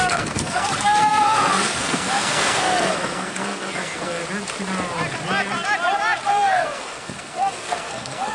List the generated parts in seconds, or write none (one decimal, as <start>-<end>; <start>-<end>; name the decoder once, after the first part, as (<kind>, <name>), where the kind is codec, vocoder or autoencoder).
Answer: 0.0-4.2 (codec, SNAC); 6.3-8.3